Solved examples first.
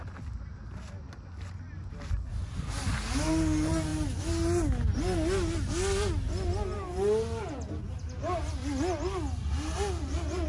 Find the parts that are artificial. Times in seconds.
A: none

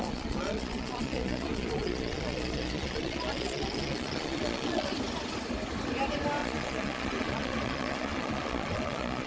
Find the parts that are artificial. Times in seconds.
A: 0.0-4.9 (vocoder, Vocos); 6.4-9.3

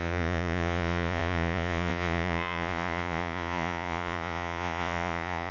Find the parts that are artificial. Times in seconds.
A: 0.0-5.5 (vocoder, Vocos)

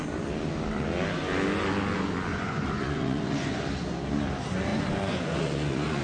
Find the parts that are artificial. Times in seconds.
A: 2.3-3.6 (vocoder, Vocos); 4.7-6.0